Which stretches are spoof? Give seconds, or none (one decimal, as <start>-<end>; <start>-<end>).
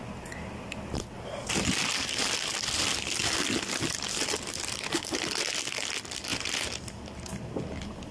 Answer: none